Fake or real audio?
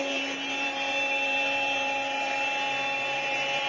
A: fake